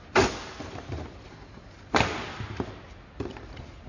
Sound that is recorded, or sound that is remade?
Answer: recorded